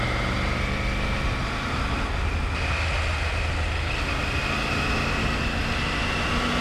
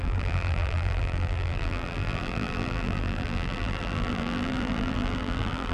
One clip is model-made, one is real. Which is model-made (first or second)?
second